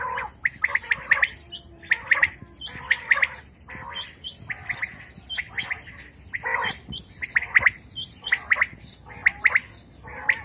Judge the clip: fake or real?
real